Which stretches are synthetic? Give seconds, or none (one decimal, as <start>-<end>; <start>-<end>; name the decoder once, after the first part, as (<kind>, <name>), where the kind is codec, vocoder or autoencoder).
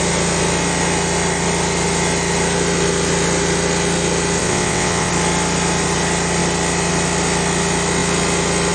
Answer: 4.4-5.1 (vocoder, WaveNeXt)